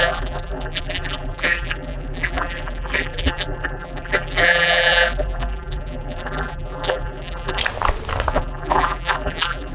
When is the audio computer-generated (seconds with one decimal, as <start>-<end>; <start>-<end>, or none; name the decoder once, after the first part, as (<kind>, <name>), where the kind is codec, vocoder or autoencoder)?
0.0-7.6 (vocoder, BigVGAN v2); 8.3-9.7